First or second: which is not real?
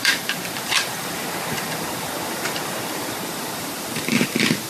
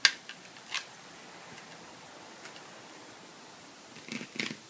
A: first